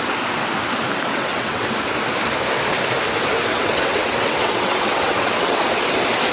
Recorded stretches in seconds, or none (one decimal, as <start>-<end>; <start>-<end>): 0.0-1.1; 1.7-3.5; 5.6-6.3